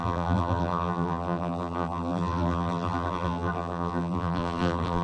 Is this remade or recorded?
remade